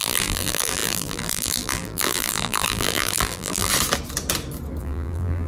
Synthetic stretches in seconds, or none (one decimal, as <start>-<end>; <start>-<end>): 0.0-3.7; 4.8-5.5

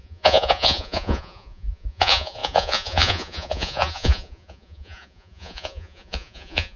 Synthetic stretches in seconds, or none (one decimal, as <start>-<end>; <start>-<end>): 0.0-6.8

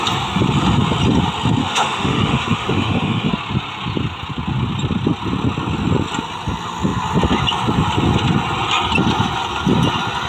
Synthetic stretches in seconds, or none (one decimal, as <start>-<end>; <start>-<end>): 1.6-3.3

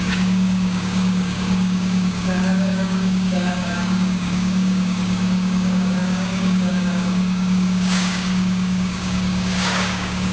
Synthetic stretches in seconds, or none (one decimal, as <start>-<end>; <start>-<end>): 0.0-10.3